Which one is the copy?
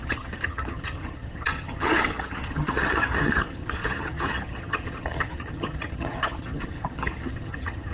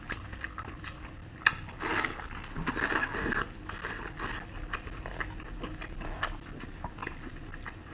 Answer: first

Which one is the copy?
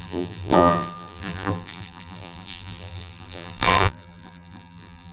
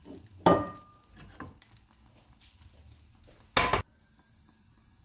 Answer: first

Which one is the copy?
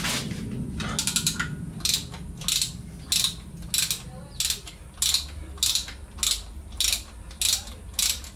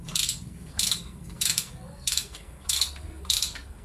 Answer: second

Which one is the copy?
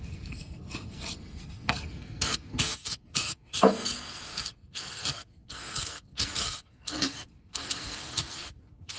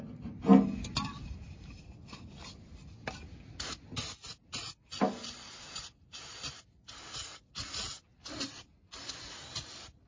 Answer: first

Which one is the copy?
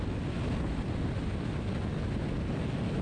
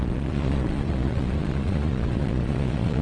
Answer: second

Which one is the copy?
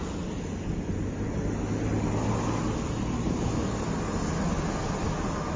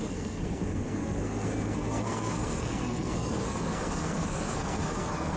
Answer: second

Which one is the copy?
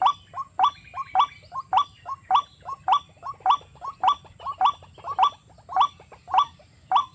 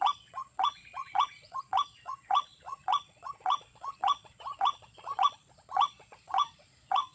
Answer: second